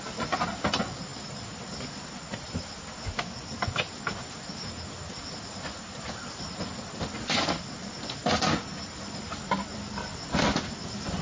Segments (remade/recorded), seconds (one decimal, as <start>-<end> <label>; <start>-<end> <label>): 0.0-11.2 recorded

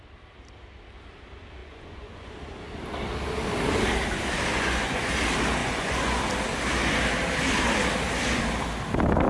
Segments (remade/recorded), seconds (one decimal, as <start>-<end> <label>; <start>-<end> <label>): 0.0-1.6 recorded; 1.6-2.3 remade; 2.3-4.5 recorded; 4.5-5.1 remade; 5.1-5.6 recorded; 5.6-6.2 remade; 6.2-9.3 recorded

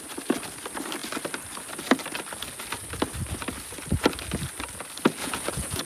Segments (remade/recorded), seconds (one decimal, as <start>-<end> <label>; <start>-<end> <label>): 0.0-5.2 recorded; 5.2-5.8 remade

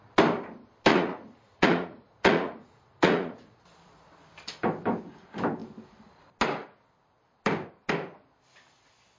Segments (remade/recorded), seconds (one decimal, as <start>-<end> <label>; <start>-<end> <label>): 0.0-0.9 recorded; 0.9-3.6 remade; 3.6-9.2 recorded

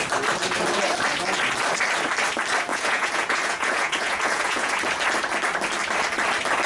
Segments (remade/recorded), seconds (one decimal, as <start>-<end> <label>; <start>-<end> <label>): 0.0-2.7 recorded; 2.7-4.7 remade; 4.7-6.7 recorded

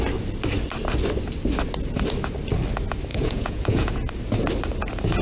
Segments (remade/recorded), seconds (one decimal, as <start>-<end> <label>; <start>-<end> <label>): 0.0-3.1 recorded; 3.1-4.1 remade; 4.1-5.2 recorded

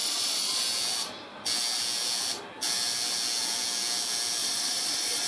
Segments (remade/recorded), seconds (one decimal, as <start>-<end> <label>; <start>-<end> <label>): 0.0-0.6 remade; 0.6-4.4 recorded; 4.4-5.3 remade

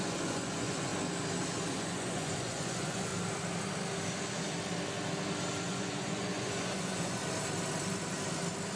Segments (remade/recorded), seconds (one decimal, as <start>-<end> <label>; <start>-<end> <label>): 0.0-0.9 remade; 0.9-1.7 recorded; 1.7-3.1 remade; 3.1-5.6 recorded; 5.6-7.2 remade; 7.2-8.8 recorded